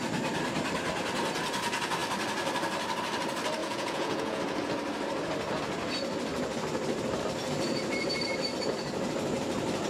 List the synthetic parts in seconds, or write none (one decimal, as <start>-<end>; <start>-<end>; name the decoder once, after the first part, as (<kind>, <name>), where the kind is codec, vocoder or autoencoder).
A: 3.6-4.4 (vocoder, Vocos)